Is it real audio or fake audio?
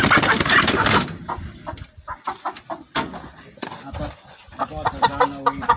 real